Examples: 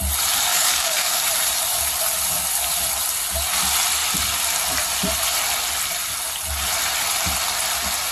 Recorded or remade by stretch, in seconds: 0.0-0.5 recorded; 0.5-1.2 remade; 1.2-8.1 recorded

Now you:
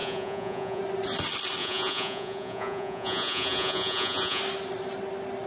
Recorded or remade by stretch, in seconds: 0.0-0.8 remade; 0.8-1.6 recorded; 1.6-4.4 remade; 4.4-5.5 recorded

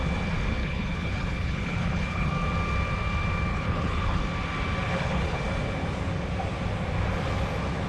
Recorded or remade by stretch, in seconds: 0.0-0.6 recorded; 0.6-2.3 remade; 2.3-3.5 recorded; 3.5-4.2 remade; 4.2-4.9 recorded; 4.9-5.4 remade; 5.4-7.9 recorded

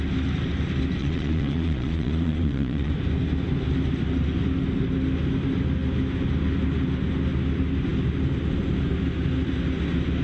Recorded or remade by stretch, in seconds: 0.0-1.0 recorded; 1.0-2.9 remade; 2.9-10.2 recorded

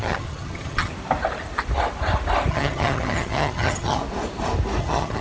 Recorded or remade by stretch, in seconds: 0.0-0.9 remade; 0.9-2.5 recorded; 2.5-4.0 remade; 4.0-4.8 recorded; 4.8-5.2 remade

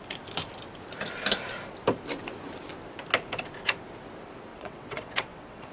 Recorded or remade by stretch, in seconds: 0.0-4.5 recorded; 4.5-5.7 remade

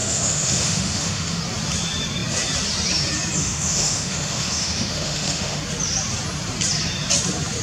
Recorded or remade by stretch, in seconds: 0.0-1.4 remade; 1.4-3.4 recorded; 3.4-5.6 remade; 5.6-7.6 recorded